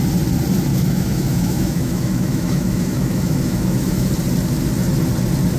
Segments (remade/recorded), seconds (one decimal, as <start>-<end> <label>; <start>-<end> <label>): 0.0-0.7 recorded; 0.7-4.1 remade; 4.1-5.6 recorded